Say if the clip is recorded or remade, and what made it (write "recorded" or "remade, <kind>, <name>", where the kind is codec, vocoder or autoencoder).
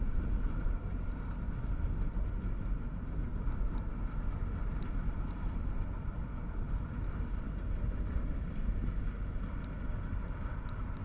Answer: recorded